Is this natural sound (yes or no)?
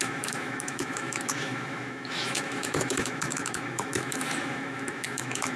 no